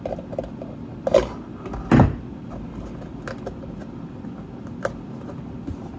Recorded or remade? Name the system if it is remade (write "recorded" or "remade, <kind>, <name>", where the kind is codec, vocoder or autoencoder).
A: recorded